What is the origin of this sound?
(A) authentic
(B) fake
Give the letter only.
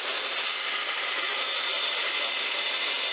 A